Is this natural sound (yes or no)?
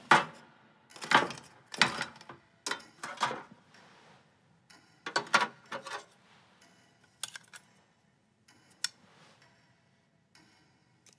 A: yes